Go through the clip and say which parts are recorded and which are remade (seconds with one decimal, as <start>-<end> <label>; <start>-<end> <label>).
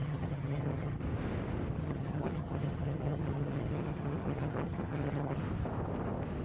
0.0-1.0 remade; 1.0-1.8 recorded; 1.8-5.4 remade; 5.4-6.4 recorded